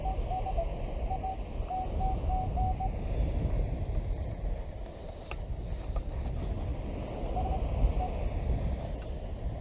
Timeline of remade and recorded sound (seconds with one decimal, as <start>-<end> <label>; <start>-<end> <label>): 0.0-9.6 recorded